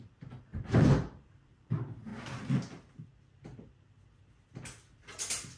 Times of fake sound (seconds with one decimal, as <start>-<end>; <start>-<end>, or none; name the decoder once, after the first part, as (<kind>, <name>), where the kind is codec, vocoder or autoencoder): 0.5-1.7 (vocoder, BigVGAN v2)